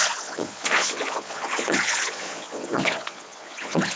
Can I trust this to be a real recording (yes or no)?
no